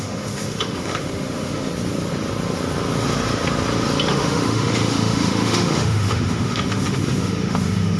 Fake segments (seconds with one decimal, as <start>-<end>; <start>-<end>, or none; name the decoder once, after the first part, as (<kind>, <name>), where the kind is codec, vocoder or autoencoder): 0.0-1.7 (autoencoder, DAC-VAE); 4.1-8.0